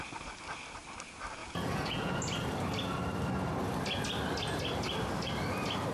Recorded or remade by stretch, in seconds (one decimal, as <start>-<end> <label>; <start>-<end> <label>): 0.0-1.4 recorded; 1.4-2.2 remade; 2.2-5.9 recorded